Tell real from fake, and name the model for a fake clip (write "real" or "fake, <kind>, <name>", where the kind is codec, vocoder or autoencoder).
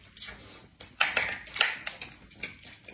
real